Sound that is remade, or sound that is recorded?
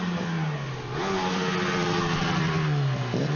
recorded